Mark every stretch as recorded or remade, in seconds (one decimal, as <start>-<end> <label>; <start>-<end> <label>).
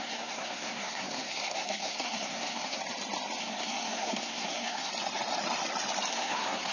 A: 0.0-2.8 remade; 2.8-3.4 recorded; 3.4-4.9 remade; 4.9-6.1 recorded; 6.1-6.7 remade